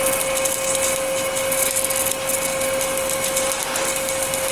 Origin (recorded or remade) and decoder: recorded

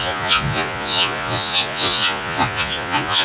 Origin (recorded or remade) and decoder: remade, vocoder, Vocos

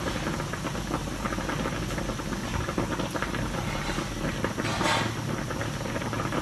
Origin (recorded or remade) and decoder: recorded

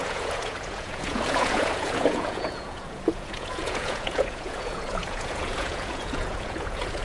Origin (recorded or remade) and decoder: remade, vocoder, Vocos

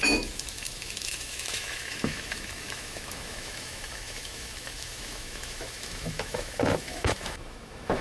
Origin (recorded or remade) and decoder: remade, autoencoder, DAC-VAE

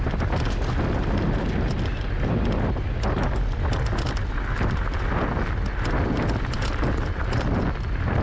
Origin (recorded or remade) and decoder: recorded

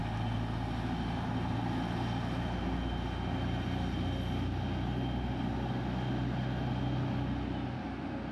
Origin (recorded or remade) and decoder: recorded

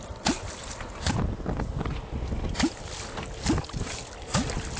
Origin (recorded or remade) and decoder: recorded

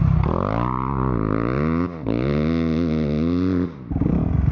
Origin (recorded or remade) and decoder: recorded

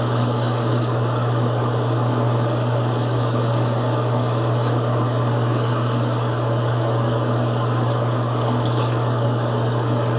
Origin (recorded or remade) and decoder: remade, codec, DAC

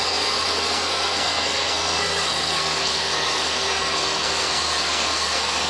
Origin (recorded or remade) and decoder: remade, codec, SNAC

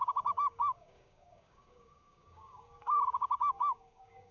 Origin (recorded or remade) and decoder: remade, codec, DAC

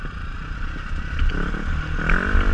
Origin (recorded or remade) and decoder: recorded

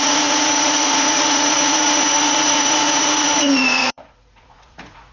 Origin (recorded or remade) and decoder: remade, vocoder, Vocos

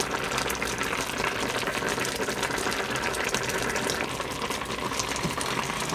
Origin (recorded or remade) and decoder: recorded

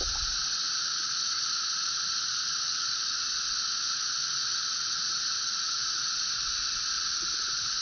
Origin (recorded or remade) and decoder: remade, vocoder, Vocos